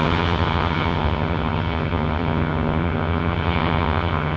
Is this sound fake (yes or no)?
yes